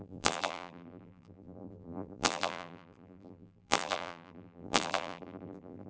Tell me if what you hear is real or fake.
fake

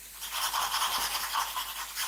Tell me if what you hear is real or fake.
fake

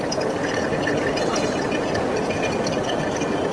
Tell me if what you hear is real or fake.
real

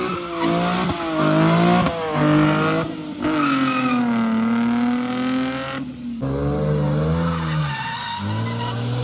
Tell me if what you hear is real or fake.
real